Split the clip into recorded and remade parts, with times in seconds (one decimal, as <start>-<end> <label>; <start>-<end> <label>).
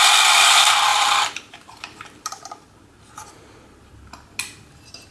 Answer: 0.0-0.9 recorded; 0.9-3.9 remade; 3.9-5.1 recorded